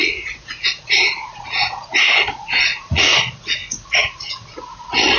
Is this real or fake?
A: fake